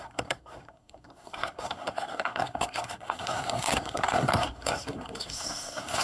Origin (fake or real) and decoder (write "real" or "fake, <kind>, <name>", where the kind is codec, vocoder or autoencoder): fake, codec, SNAC